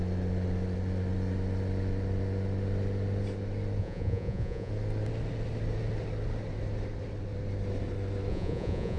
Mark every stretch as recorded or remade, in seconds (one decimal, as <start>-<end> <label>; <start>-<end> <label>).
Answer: 0.0-3.8 recorded; 3.8-4.7 remade; 4.7-8.3 recorded; 8.3-9.0 remade